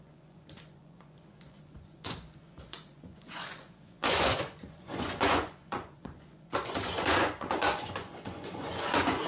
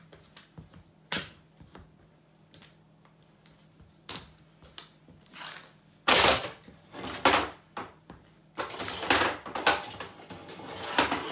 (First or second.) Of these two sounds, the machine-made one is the first